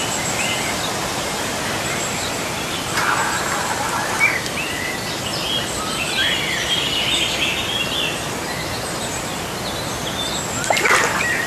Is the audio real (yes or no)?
yes